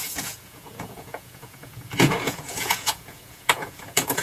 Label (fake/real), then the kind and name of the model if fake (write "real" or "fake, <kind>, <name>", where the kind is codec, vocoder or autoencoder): fake, vocoder, Vocos